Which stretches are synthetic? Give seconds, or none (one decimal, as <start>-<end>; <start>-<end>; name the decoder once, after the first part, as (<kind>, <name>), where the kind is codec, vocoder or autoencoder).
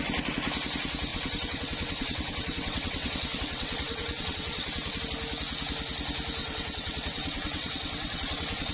1.1-5.0 (vocoder, WaveNeXt); 6.4-8.7